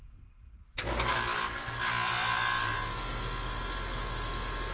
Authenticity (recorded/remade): recorded